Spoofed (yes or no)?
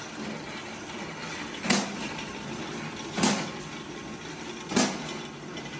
no